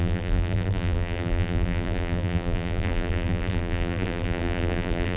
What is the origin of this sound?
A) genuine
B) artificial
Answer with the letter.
B